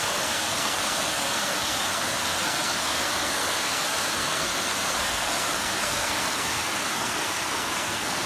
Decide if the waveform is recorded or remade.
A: remade